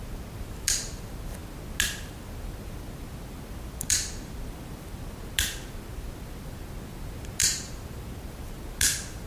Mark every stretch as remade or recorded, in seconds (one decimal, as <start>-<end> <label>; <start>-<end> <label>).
0.0-9.3 recorded